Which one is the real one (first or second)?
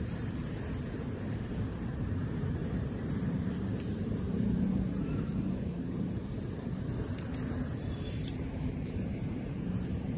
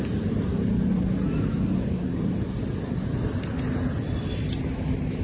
second